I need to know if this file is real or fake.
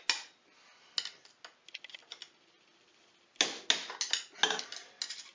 real